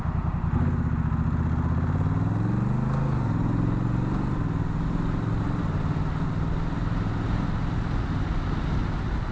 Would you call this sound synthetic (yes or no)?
no